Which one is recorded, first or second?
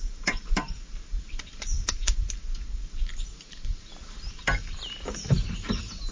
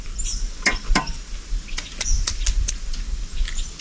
second